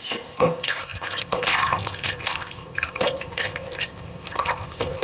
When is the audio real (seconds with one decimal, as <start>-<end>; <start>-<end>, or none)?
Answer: none

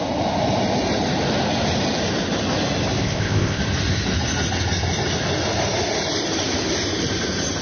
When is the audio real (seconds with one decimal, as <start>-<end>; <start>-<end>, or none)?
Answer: 0.0-3.0; 3.6-7.6

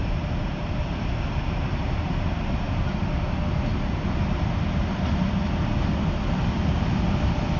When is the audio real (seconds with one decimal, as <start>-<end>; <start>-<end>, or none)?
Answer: 3.1-3.7; 5.3-7.6

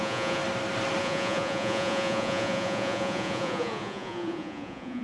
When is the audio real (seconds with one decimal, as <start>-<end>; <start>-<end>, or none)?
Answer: 0.4-1.0

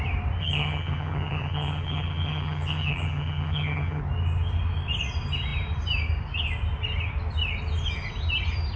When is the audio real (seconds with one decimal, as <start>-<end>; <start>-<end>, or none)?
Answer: 0.0-0.4; 4.0-8.8

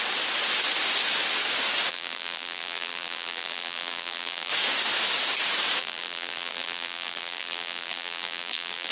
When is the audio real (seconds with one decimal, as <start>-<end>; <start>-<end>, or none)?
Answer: 0.0-1.9; 4.5-5.8

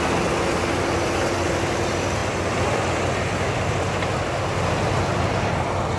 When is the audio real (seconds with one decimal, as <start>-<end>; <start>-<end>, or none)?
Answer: 0.0-6.0

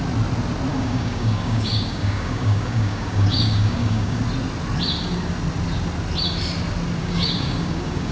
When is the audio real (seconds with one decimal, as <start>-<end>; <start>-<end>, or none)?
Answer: 0.0-0.7; 4.2-7.0